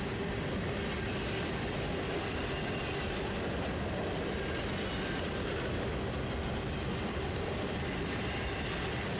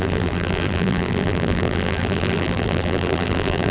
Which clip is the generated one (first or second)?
second